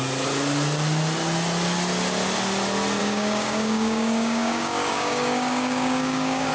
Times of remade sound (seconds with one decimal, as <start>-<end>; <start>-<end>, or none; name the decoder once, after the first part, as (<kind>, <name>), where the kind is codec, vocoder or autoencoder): 3.0-6.5 (codec, DAC)